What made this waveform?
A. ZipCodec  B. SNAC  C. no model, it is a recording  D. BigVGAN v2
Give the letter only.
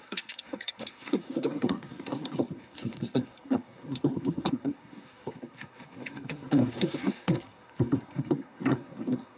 B